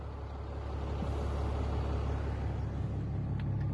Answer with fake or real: real